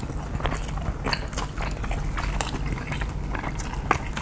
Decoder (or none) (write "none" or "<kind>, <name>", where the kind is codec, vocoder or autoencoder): none